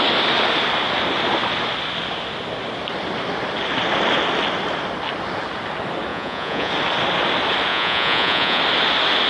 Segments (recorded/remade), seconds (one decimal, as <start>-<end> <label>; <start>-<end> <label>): 0.0-6.1 recorded; 6.1-6.7 remade; 6.7-7.7 recorded; 7.7-8.6 remade; 8.6-9.3 recorded